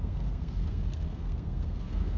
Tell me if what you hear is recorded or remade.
remade